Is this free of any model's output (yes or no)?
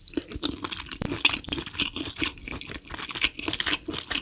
yes